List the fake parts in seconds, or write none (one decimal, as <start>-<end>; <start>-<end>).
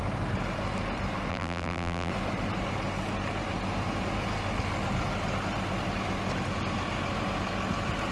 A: 1.3-2.1